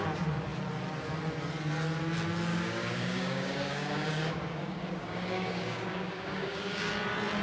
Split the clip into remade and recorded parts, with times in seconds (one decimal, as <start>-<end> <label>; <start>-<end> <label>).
0.0-2.5 recorded; 2.5-6.9 remade; 6.9-7.4 recorded